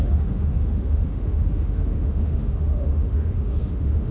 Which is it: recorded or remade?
remade